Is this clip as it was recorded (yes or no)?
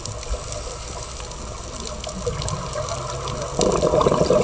yes